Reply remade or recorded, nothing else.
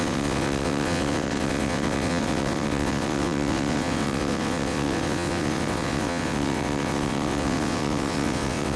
remade